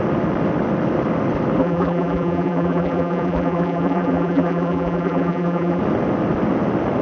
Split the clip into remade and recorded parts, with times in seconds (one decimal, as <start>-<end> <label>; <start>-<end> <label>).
0.0-1.6 recorded; 1.6-5.8 remade; 5.8-7.0 recorded